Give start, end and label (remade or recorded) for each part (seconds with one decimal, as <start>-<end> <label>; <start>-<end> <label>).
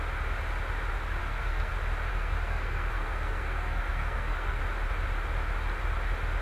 0.0-1.2 recorded; 1.2-1.7 remade; 1.7-2.1 recorded; 2.1-4.6 remade; 4.6-6.4 recorded